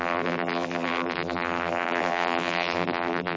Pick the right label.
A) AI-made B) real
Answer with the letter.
A